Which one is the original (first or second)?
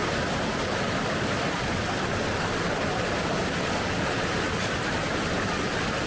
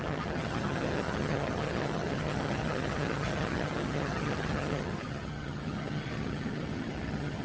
first